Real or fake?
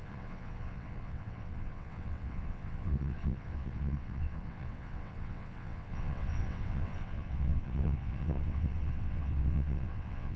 fake